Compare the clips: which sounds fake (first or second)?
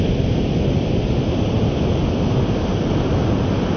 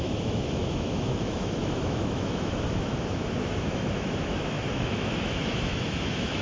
second